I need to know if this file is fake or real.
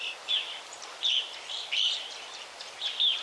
real